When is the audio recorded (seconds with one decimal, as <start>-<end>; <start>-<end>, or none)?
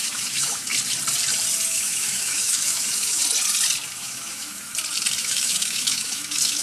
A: 0.7-1.7; 3.2-3.9; 4.7-5.2